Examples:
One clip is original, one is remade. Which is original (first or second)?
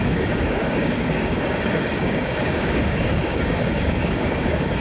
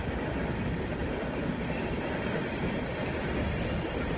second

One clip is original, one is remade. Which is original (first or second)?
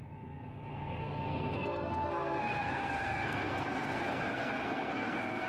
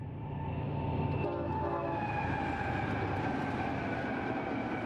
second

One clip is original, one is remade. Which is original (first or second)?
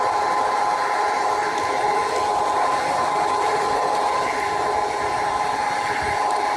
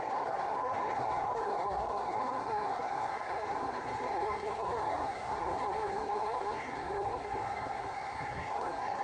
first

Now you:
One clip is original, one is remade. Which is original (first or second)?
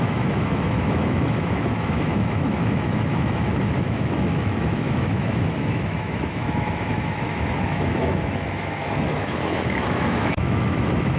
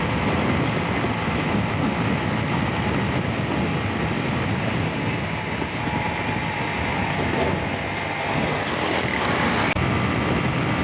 second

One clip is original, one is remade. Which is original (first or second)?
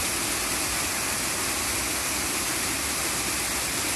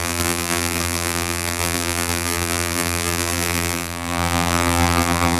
first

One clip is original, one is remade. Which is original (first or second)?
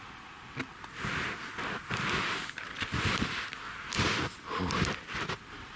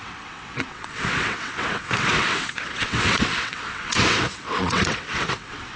first